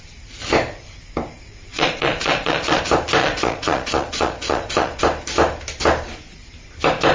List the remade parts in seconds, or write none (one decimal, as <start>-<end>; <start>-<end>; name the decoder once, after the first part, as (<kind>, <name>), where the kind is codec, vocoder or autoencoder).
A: 1.7-2.8 (vocoder, Vocos); 3.2-5.0